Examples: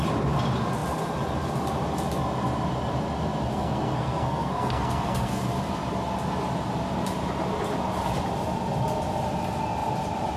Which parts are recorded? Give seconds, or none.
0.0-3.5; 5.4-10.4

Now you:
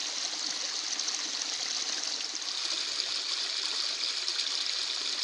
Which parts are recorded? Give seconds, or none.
0.0-5.2